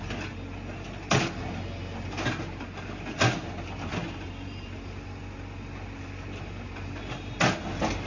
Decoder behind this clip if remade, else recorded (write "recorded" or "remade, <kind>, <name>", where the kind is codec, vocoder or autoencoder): recorded